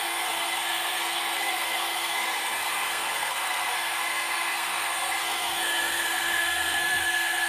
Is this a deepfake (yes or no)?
yes